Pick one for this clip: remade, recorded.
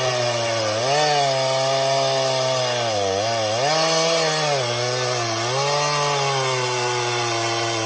recorded